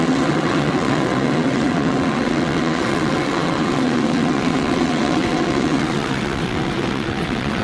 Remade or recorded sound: remade